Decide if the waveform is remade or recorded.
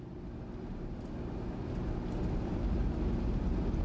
recorded